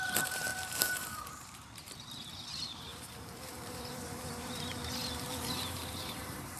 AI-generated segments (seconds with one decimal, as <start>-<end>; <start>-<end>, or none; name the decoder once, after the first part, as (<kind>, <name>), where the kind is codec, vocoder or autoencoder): 0.0-6.6 (vocoder, BigVGAN v2)